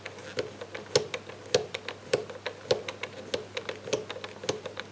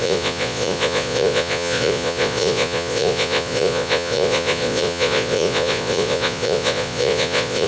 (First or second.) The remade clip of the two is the second